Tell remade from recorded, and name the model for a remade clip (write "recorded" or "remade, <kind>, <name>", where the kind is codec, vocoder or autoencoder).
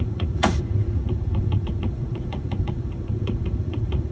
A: remade, vocoder, Vocos